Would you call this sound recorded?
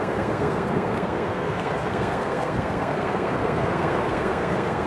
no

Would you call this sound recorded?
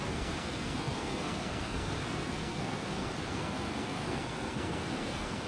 no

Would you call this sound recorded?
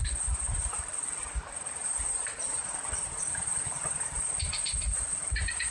yes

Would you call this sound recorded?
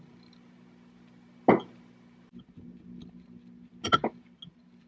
yes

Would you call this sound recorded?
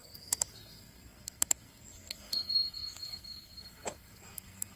no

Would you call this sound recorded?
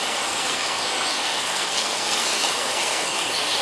no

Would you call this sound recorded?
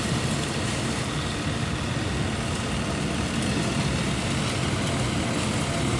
yes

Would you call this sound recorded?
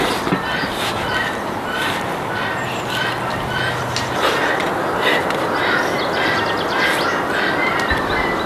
yes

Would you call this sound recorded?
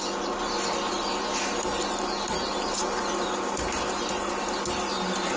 yes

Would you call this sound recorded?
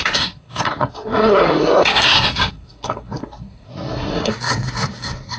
no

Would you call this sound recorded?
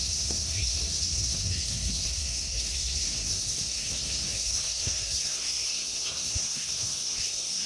no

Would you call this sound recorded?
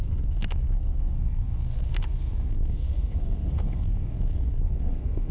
no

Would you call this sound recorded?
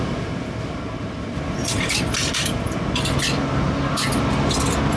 yes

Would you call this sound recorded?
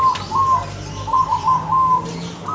yes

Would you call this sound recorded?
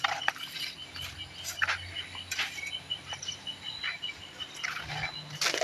yes